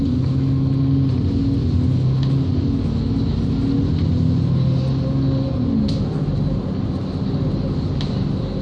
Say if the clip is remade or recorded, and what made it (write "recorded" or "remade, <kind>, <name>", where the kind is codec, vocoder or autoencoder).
recorded